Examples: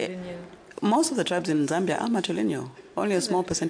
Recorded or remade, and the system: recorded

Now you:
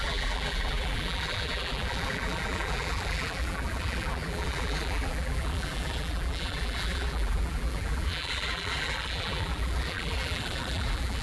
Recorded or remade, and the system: remade, vocoder, BigVGAN v2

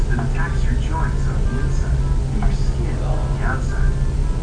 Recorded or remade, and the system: recorded